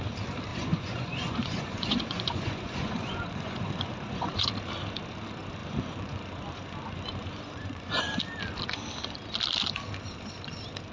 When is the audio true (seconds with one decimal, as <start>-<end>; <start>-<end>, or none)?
0.0-0.5; 4.5-5.6; 8.0-10.9